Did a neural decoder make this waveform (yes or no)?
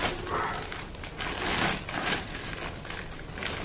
no